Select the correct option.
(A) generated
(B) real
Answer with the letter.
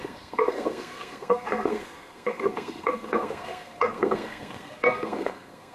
A